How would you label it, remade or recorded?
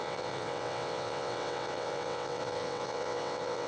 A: remade